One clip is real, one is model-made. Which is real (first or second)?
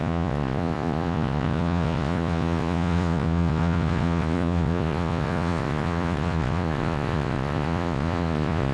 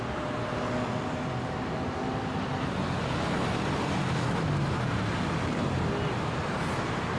second